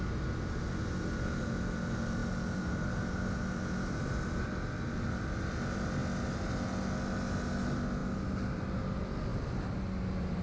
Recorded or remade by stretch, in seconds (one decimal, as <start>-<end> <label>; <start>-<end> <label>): 0.0-10.4 recorded